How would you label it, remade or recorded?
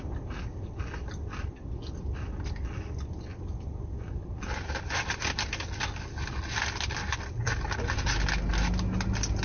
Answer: recorded